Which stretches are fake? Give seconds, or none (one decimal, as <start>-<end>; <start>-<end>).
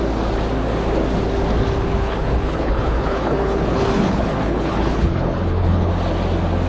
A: 1.9-5.9